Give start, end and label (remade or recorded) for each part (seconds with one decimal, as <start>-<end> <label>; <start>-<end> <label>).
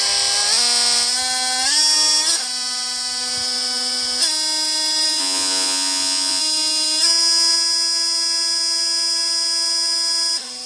0.0-5.2 recorded; 5.2-6.4 remade; 6.4-10.7 recorded